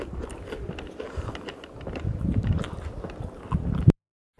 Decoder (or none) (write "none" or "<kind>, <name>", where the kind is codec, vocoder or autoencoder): vocoder, BigVGAN v2